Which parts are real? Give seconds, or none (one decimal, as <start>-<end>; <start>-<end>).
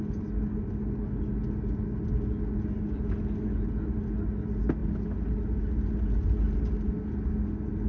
0.0-7.9